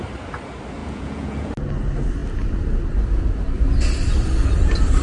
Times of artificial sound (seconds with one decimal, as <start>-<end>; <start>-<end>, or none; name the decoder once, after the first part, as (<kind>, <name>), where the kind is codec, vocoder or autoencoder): 0.8-1.5 (vocoder, Vocos)